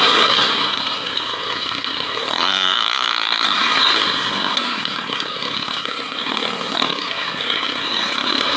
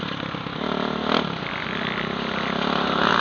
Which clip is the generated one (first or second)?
first